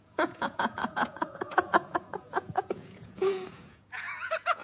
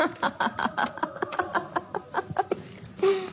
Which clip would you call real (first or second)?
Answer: second